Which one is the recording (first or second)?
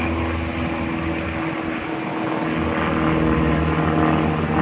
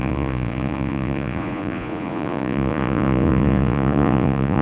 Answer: first